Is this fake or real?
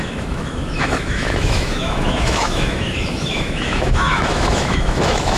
fake